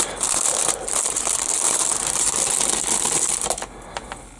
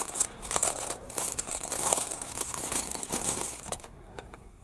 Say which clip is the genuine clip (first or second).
first